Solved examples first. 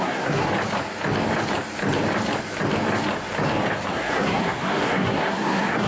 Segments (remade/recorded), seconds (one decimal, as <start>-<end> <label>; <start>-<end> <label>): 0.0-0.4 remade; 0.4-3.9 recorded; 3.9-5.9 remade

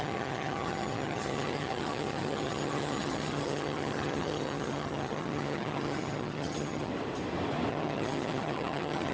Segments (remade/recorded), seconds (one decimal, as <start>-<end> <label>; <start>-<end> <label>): 0.0-6.9 remade; 6.9-7.7 recorded; 7.7-9.1 remade

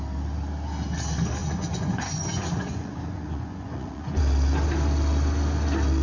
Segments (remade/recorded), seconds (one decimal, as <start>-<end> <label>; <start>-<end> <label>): 0.0-1.4 recorded; 1.4-4.2 remade; 4.2-6.0 recorded

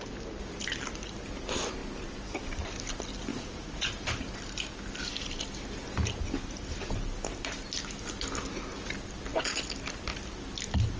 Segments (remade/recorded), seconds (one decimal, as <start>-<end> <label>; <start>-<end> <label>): 0.0-3.3 recorded; 3.3-4.0 remade; 4.0-11.0 recorded

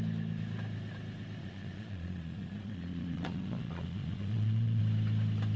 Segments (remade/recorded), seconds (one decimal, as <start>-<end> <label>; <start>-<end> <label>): 0.0-1.4 recorded; 1.4-4.8 remade; 4.8-5.6 recorded